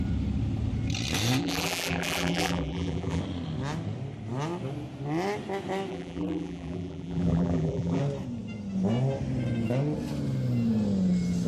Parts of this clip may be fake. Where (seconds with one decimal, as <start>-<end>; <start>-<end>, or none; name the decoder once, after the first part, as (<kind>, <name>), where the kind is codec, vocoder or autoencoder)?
1.4-3.2 (vocoder, BigVGAN v2); 5.9-8.0